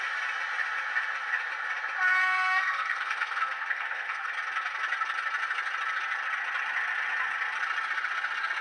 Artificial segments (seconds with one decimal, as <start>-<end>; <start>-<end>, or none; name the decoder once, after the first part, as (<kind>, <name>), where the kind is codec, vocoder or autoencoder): 2.2-4.3 (codec, SNAC)

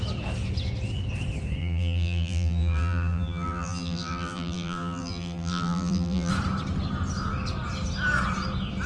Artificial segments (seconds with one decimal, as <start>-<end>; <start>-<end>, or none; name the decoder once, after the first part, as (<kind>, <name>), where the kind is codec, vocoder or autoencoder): 1.6-6.3 (vocoder, BigVGAN v2)

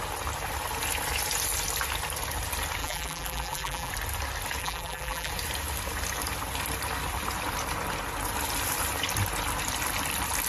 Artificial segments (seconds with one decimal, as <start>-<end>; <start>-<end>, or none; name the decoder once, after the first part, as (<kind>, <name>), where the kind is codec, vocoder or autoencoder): 2.8-3.9 (vocoder, BigVGAN v2); 4.6-5.3